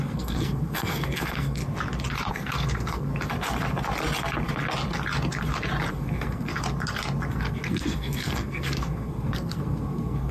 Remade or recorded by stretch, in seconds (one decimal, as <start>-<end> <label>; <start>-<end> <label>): 0.0-1.6 remade; 1.6-2.3 recorded; 2.3-3.1 remade; 3.1-5.9 recorded; 5.9-6.5 remade; 6.5-7.3 recorded; 7.3-10.3 remade